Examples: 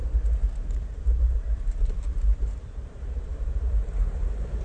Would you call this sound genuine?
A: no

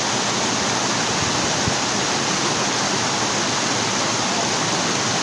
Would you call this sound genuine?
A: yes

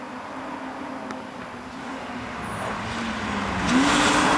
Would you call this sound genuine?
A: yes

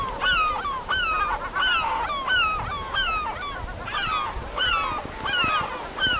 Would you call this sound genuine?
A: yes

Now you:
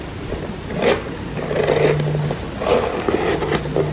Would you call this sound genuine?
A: yes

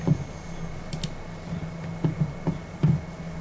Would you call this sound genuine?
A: yes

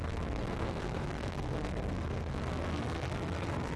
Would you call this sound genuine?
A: no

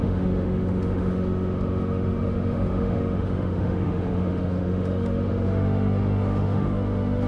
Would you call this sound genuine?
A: no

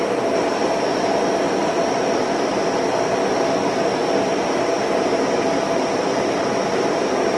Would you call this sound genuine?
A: yes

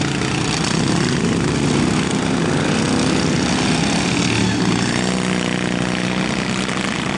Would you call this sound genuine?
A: yes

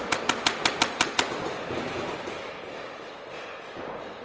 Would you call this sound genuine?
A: yes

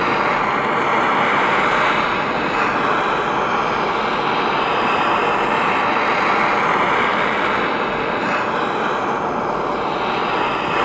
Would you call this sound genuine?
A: no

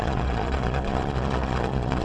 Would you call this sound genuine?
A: no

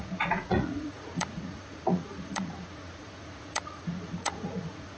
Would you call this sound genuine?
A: no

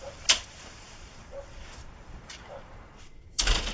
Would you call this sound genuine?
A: no